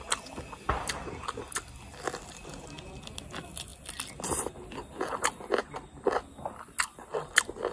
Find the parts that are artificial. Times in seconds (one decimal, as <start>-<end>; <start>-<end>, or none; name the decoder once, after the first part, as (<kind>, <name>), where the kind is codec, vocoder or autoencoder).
none